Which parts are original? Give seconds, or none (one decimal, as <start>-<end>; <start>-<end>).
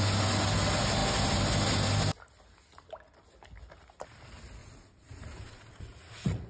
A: 0.0-4.6